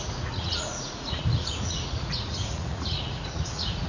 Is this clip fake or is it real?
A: fake